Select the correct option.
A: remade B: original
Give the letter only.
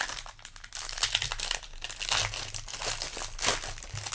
B